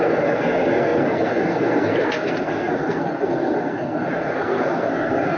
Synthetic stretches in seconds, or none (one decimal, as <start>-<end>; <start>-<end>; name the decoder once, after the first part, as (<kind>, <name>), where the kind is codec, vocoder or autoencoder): 0.0-5.4 (codec, SNAC)